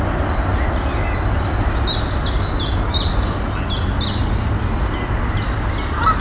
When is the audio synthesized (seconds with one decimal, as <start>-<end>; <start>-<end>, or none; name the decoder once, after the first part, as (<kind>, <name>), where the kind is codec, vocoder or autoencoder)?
none